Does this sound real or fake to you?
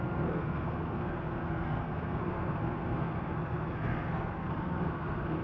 fake